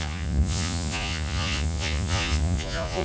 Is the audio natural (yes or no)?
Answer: no